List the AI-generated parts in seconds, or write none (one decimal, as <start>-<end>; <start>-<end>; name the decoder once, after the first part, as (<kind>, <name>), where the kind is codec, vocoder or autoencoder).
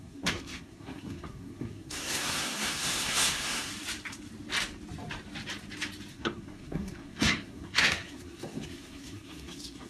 0.0-3.7 (codec, SNAC); 6.1-9.9